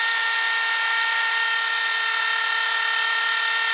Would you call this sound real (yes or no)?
no